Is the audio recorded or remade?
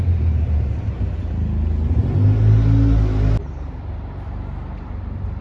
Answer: recorded